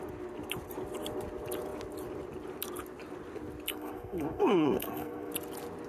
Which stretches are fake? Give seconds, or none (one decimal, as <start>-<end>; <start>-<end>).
3.7-5.3